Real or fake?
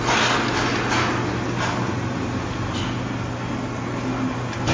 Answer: real